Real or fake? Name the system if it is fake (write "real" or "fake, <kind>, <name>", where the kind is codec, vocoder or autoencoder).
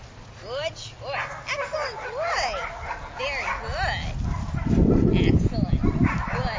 real